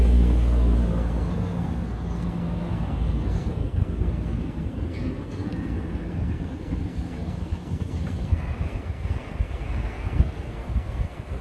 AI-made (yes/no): yes